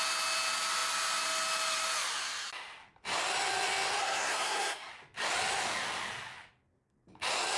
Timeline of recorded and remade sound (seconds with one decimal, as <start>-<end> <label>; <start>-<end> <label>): 0.0-4.0 recorded; 4.0-4.9 remade; 4.9-7.6 recorded